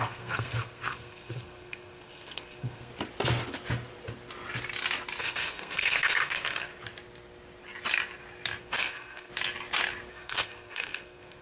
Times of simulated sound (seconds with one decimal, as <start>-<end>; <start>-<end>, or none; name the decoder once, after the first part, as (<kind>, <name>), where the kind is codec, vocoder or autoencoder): 0.0-2.9 (codec, SNAC); 5.2-6.7; 8.6-9.3; 10.1-11.4